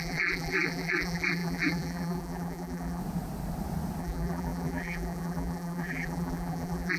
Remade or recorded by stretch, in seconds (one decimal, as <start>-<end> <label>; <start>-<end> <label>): 0.0-3.0 remade; 3.0-4.0 recorded; 4.0-7.0 remade